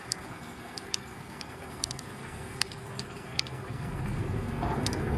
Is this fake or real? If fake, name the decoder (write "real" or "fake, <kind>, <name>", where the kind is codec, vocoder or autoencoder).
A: fake, codec, SNAC